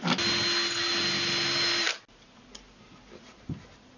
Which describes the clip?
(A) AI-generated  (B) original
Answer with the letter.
B